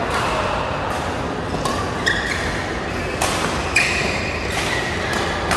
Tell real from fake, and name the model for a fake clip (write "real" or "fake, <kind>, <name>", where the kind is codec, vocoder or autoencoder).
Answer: real